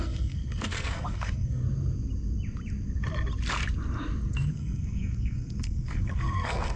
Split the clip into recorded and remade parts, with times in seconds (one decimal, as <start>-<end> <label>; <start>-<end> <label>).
0.0-1.6 remade; 1.6-4.5 recorded; 4.5-6.8 remade